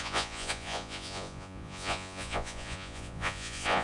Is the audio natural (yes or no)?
no